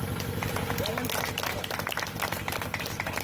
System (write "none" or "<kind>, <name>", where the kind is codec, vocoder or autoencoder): none